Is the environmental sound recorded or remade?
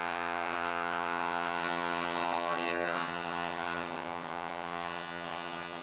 remade